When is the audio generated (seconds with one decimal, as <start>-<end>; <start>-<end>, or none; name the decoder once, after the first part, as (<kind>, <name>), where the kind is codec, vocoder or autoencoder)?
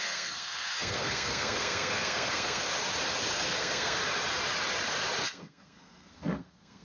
0.0-2.7 (codec, SNAC); 3.3-4.0; 5.2-6.8